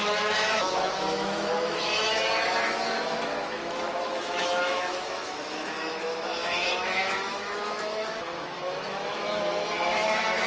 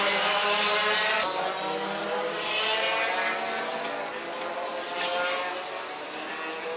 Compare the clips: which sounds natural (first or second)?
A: second